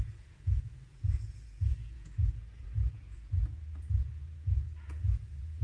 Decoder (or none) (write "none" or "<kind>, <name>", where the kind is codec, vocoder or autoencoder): vocoder, Vocos